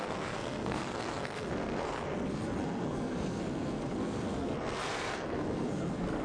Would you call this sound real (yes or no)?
no